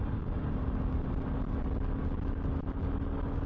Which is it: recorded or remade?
recorded